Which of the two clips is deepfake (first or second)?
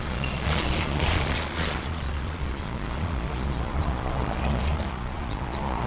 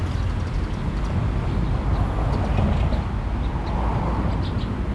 first